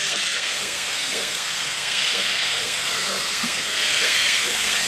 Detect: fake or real fake